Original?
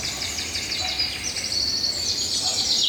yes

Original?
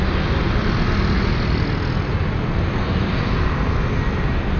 yes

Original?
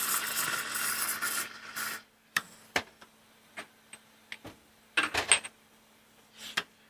yes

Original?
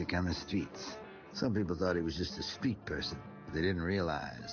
yes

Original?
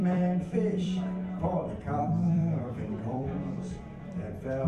no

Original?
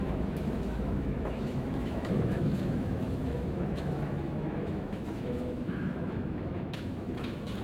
no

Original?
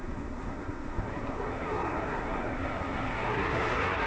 no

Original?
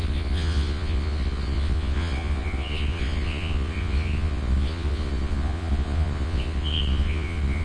no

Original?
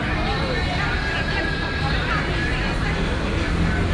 yes